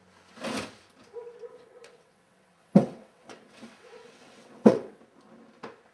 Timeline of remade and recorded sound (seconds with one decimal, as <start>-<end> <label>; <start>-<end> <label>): 0.0-1.5 recorded; 1.5-5.0 remade; 5.0-5.9 recorded